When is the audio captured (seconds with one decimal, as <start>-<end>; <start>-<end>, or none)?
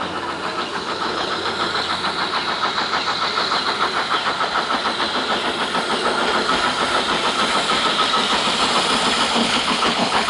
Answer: 0.0-0.7; 1.3-9.4